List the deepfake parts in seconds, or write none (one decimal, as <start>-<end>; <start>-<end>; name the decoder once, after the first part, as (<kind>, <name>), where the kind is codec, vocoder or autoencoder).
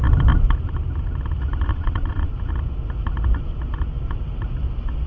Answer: 1.7-2.3 (vocoder, WaveNeXt)